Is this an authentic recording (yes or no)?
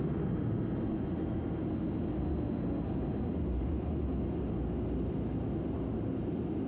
yes